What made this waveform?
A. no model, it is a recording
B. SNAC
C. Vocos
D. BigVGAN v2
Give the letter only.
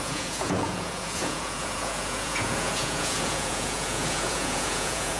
C